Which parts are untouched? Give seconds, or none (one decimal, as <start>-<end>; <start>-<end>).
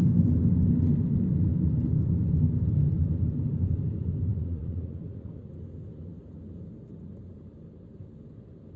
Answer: 0.0-4.3; 5.5-8.8